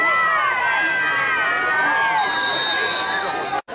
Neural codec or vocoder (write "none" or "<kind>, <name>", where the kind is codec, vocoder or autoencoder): none